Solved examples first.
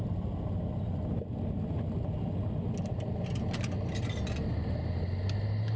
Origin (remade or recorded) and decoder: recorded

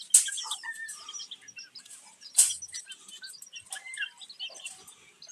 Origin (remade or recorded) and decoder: recorded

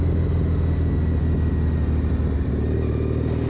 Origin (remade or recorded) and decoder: recorded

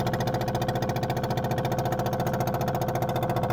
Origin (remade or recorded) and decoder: recorded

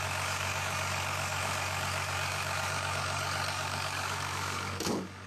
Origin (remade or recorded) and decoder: remade, codec, DAC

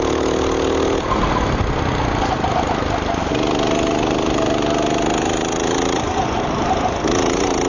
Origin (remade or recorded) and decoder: recorded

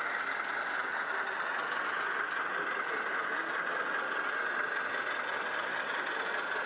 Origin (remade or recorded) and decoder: recorded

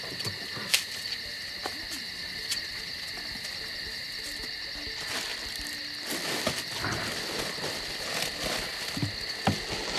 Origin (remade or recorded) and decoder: recorded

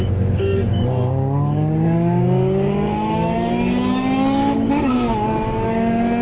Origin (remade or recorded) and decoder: remade, codec, DAC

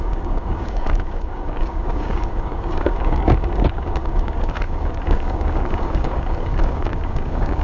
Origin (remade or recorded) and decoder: remade, codec, DAC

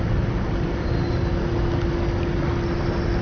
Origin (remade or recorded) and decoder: recorded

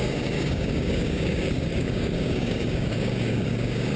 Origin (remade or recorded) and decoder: remade, codec, DAC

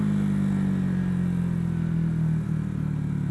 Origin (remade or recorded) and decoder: recorded